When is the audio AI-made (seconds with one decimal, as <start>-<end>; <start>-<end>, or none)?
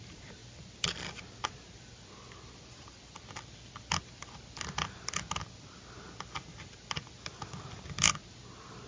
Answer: none